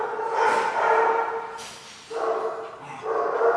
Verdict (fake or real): real